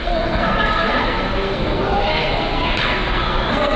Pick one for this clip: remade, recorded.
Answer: remade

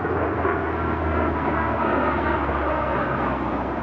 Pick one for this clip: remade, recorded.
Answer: remade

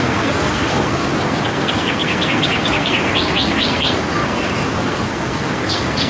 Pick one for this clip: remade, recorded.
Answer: remade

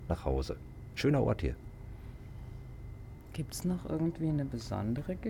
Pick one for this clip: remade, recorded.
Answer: recorded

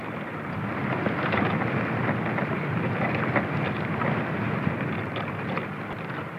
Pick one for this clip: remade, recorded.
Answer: recorded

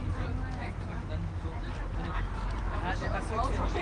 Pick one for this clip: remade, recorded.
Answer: recorded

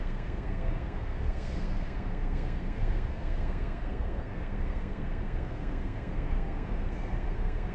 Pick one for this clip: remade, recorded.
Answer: remade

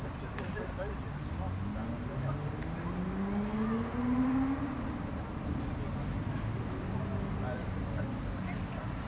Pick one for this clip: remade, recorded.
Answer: recorded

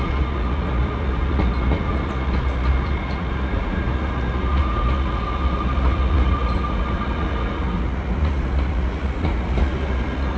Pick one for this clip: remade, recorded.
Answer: remade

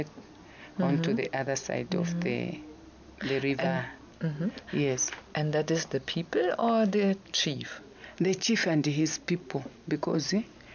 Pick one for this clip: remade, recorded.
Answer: recorded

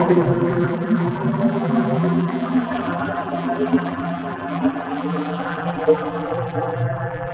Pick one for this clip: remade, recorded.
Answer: remade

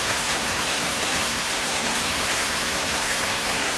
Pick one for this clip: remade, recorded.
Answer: remade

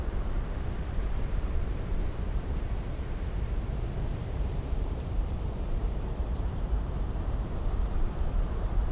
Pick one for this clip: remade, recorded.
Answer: remade